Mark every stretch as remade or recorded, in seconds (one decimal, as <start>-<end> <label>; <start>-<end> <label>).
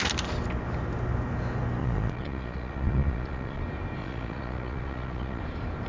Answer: 0.0-1.8 recorded; 1.8-3.6 remade; 3.6-4.0 recorded; 4.0-5.4 remade; 5.4-5.9 recorded